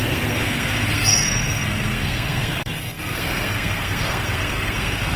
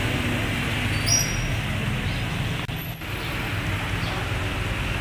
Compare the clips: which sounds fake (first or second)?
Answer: first